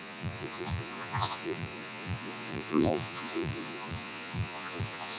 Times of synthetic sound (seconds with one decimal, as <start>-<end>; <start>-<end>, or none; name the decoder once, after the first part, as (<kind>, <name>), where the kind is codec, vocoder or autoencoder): 0.0-5.2 (vocoder, Vocos)